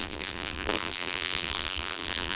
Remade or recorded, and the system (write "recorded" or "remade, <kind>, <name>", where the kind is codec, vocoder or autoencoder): remade, vocoder, BigVGAN v2